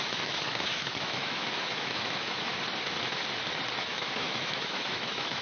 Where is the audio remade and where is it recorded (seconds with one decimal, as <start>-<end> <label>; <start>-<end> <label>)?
0.0-2.5 remade; 2.5-3.9 recorded; 3.9-5.4 remade